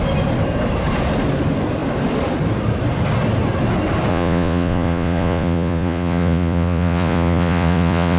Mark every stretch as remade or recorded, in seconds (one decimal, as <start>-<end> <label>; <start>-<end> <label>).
0.0-4.1 recorded; 4.1-8.2 remade